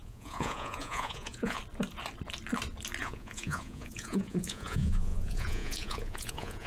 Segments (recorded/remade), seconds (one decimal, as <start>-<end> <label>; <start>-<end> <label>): 0.0-1.6 remade; 1.6-3.0 recorded; 3.0-6.7 remade